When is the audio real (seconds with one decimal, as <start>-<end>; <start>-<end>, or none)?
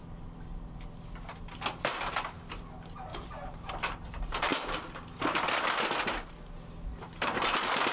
0.0-3.1; 3.7-7.9